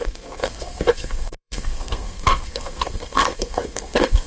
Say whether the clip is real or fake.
fake